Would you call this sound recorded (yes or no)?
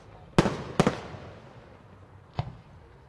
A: yes